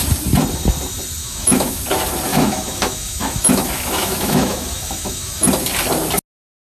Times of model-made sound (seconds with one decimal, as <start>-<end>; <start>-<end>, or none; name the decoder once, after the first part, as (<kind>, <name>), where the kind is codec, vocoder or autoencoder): 1.2-1.8 (autoencoder, DAC-VAE); 2.3-5.5